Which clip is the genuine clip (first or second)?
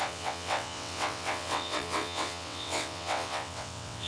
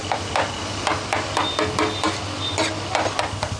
second